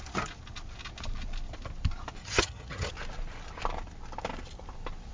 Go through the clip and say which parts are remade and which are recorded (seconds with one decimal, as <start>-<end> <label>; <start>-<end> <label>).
0.0-2.2 recorded; 2.2-2.9 remade; 2.9-5.1 recorded